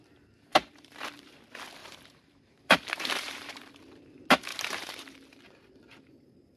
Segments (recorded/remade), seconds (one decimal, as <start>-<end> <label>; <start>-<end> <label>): 0.0-0.5 recorded; 0.5-1.4 remade; 1.4-1.8 recorded; 1.8-3.7 remade; 3.7-4.5 recorded; 4.5-5.1 remade; 5.1-6.6 recorded

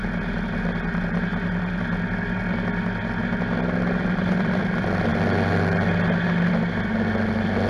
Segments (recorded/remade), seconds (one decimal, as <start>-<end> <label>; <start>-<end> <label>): 0.0-7.7 recorded

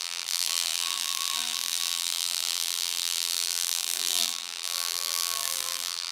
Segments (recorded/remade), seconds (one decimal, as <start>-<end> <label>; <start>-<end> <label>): 0.0-6.1 remade

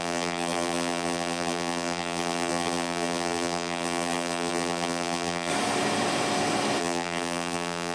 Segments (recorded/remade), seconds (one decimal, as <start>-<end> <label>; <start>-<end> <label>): 0.0-5.5 remade; 5.5-6.8 recorded; 6.8-7.9 remade

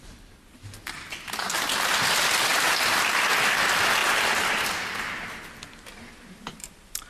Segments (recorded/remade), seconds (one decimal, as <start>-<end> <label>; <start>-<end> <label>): 0.0-4.0 recorded; 4.0-5.0 remade; 5.0-6.5 recorded; 6.5-7.1 remade